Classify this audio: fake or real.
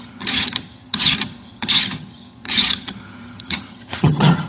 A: fake